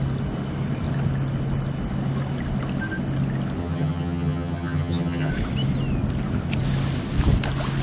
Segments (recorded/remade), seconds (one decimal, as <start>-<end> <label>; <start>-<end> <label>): 0.0-3.6 recorded; 3.6-5.3 remade; 5.3-7.8 recorded